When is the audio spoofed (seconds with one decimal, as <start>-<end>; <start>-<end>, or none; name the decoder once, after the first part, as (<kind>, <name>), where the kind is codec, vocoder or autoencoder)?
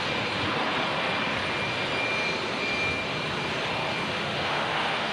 4.1-5.1 (autoencoder, DAC-VAE)